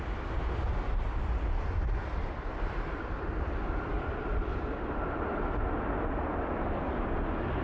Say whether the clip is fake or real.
fake